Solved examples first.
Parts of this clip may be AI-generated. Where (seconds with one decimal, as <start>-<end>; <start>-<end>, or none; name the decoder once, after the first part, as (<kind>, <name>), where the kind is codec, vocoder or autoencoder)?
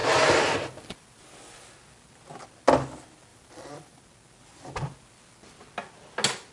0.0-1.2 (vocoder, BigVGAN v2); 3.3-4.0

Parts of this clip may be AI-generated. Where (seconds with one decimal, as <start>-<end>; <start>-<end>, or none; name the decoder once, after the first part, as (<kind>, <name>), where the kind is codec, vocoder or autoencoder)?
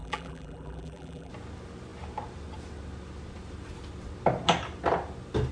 0.0-1.3 (vocoder, BigVGAN v2)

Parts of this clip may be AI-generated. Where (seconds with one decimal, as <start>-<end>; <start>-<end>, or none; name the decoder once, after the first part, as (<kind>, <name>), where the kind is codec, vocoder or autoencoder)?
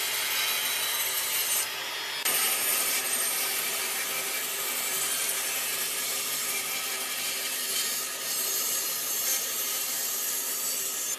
2.7-6.6 (vocoder, BigVGAN v2); 9.2-10.5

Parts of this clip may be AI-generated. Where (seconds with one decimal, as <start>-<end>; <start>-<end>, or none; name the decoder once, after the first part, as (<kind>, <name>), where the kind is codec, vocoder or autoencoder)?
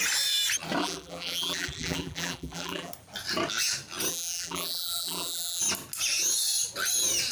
0.8-2.9 (vocoder, BigVGAN v2); 4.1-5.6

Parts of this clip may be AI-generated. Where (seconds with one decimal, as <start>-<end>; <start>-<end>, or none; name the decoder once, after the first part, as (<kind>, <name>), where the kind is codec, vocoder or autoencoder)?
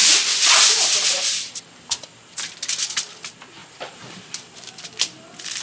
3.6-4.6 (vocoder, BigVGAN v2)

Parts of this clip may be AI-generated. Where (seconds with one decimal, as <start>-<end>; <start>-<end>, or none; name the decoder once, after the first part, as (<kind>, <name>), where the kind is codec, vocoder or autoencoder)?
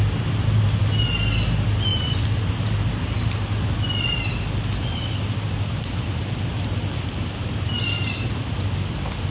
1.9-2.6 (vocoder, BigVGAN v2)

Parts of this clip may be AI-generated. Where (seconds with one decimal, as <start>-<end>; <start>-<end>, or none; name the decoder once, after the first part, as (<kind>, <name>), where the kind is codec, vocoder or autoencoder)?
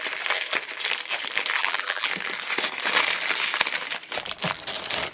1.6-2.1 (vocoder, BigVGAN v2)